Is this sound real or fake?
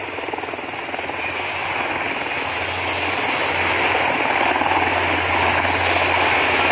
real